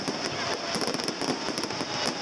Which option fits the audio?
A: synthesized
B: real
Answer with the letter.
B